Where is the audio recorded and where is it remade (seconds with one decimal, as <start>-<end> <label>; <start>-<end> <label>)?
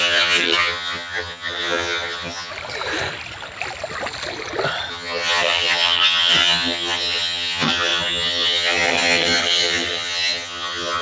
0.0-2.5 remade; 2.5-4.9 recorded; 4.9-11.0 remade